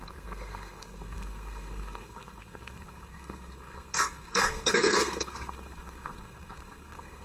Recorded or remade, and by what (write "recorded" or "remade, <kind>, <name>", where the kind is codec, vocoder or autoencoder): remade, codec, SNAC